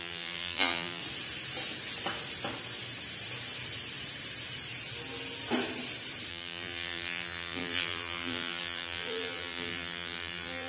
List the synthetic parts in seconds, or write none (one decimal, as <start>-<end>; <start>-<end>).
0.0-1.0; 6.3-10.7